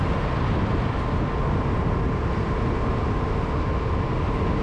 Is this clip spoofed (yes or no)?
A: no